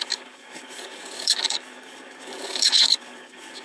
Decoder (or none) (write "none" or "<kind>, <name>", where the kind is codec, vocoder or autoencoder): codec, DAC